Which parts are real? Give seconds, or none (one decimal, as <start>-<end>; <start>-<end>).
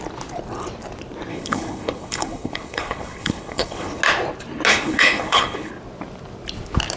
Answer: 0.0-1.3; 4.0-4.7; 5.7-7.0